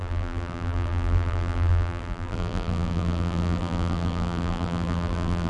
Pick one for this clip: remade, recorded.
remade